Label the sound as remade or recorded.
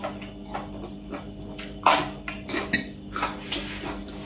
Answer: recorded